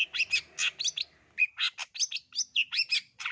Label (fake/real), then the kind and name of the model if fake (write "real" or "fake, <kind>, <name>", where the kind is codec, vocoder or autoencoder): real